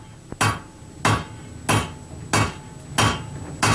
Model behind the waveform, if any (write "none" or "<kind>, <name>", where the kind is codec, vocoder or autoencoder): none